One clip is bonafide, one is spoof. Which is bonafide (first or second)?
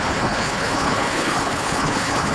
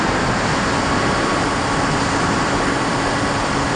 second